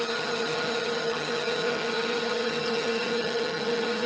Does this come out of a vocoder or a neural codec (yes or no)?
yes